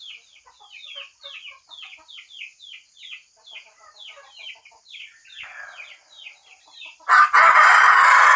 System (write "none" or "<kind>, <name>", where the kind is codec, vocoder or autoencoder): none